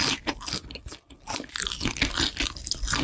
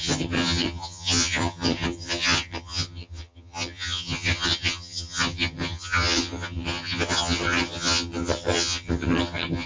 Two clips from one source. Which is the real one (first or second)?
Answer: first